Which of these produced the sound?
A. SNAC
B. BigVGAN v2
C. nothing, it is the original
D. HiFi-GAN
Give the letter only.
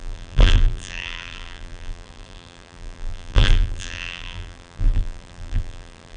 B